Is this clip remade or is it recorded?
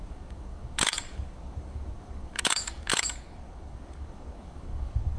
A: remade